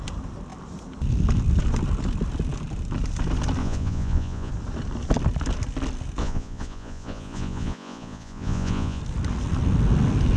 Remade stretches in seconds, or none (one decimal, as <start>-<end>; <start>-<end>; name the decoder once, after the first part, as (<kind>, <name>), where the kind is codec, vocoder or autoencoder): 3.6-4.5 (vocoder, Vocos); 6.2-9.0